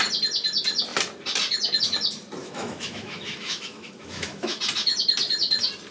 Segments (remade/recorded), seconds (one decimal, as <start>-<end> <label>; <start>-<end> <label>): 0.0-2.4 recorded; 2.4-4.6 remade; 4.6-5.9 recorded